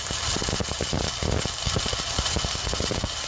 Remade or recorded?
remade